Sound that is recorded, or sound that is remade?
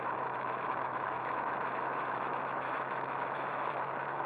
remade